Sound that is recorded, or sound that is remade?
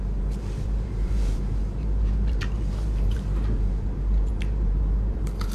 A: remade